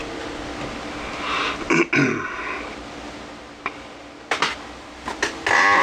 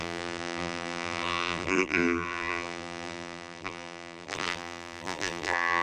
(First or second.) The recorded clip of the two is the first